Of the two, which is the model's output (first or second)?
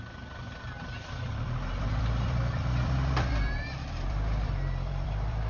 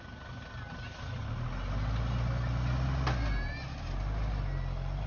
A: first